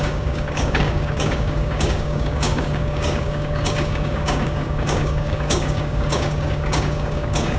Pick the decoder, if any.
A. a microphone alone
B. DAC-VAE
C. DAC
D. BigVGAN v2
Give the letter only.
C